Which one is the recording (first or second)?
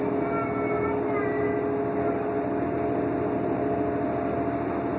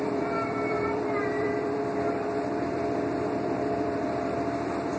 first